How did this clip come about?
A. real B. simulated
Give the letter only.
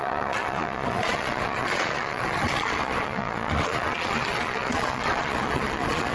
B